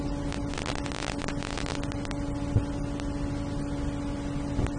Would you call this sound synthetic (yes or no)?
no